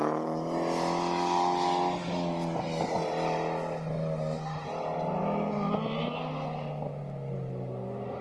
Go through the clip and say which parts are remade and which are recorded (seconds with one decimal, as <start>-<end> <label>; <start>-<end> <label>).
0.0-8.2 recorded